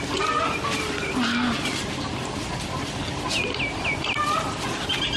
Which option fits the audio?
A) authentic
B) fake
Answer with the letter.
A